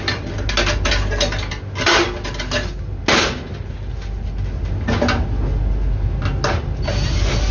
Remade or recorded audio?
recorded